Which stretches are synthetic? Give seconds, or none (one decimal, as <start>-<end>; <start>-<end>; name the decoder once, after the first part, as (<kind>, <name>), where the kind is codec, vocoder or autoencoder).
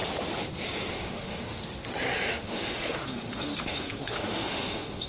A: 0.9-1.6 (autoencoder, DAC-VAE); 2.3-5.1